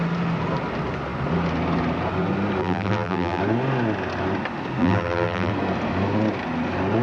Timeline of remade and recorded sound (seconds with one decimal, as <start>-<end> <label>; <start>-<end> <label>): 0.0-2.6 recorded; 2.6-3.4 remade; 3.4-4.8 recorded; 4.8-5.5 remade; 5.5-7.0 recorded